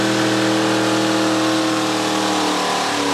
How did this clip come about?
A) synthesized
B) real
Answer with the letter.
B